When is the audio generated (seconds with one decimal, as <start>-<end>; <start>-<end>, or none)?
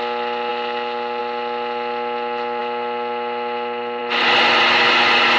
none